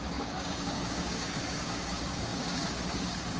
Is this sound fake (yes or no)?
yes